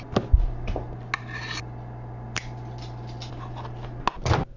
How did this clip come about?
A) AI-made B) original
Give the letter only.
B